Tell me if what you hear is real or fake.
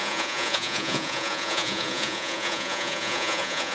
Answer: fake